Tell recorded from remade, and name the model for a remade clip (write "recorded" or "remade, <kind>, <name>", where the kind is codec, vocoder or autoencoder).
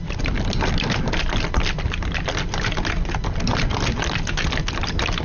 recorded